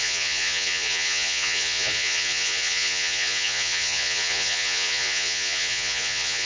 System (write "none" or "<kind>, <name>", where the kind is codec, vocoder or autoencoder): vocoder, Vocos